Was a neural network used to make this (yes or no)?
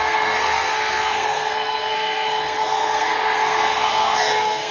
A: yes